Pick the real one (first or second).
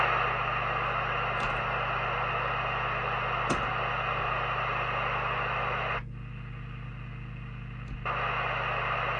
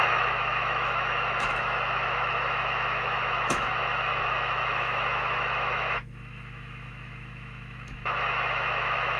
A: first